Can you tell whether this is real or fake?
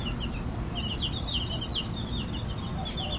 real